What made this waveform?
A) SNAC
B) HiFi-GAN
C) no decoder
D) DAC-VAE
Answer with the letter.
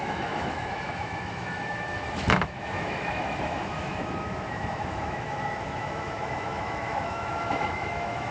D